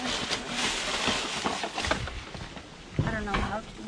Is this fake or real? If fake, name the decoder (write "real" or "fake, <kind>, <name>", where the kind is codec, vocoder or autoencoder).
real